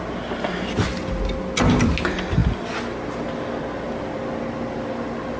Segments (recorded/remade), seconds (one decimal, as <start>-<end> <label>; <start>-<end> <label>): 0.0-5.4 recorded